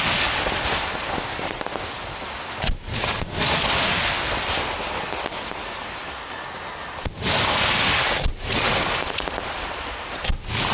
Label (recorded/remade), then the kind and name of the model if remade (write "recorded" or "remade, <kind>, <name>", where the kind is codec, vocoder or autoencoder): recorded